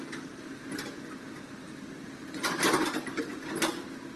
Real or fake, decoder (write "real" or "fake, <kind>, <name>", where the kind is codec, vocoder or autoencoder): real